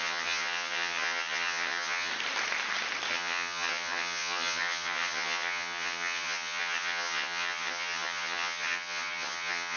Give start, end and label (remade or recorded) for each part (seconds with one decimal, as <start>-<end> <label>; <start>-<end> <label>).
0.0-2.1 remade; 2.1-3.1 recorded; 3.1-9.8 remade